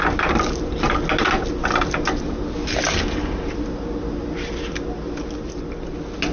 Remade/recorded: recorded